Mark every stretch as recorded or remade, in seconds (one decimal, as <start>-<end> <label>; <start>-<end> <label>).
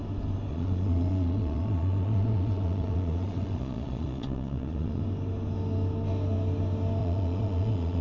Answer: 0.0-0.5 recorded; 0.5-5.0 remade; 5.0-7.0 recorded; 7.0-8.0 remade